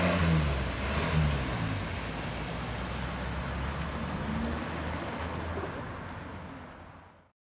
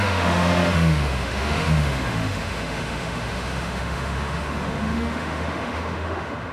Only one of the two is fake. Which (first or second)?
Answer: second